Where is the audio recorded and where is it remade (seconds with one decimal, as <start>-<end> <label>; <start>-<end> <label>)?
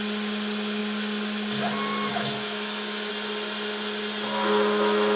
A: 0.0-2.1 recorded; 2.1-3.1 remade; 3.1-5.2 recorded